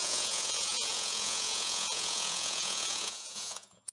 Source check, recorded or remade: remade